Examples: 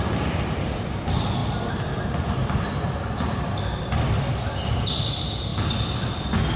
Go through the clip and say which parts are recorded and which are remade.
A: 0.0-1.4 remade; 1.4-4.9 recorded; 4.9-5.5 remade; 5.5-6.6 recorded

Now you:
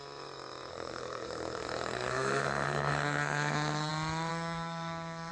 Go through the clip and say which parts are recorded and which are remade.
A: 0.0-0.7 recorded; 0.7-3.9 remade; 3.9-4.3 recorded; 4.3-5.3 remade

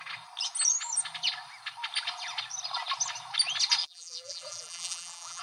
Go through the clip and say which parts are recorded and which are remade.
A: 0.0-3.8 recorded; 3.8-5.4 remade

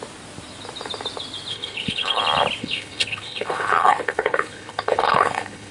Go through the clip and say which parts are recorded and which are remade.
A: 0.0-1.5 recorded; 1.5-2.2 remade; 2.2-2.6 recorded; 2.6-5.7 remade

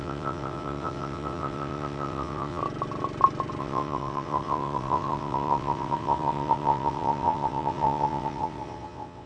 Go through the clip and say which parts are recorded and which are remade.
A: 0.0-2.6 remade; 2.6-3.6 recorded; 3.6-9.3 remade